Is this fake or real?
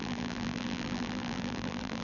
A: fake